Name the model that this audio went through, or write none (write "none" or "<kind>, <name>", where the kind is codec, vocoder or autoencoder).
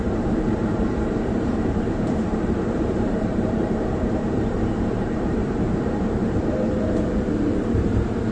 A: vocoder, BigVGAN v2